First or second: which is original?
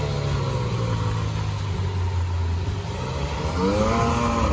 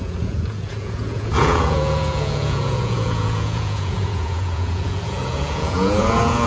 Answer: first